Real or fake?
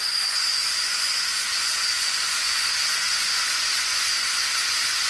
fake